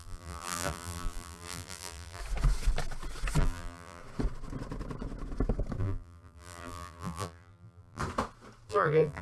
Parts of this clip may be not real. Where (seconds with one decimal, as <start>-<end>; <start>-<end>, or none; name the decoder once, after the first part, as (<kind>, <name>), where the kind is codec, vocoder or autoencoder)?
0.0-2.2 (vocoder, BigVGAN v2); 3.4-4.0; 5.8-8.0; 8.7-9.2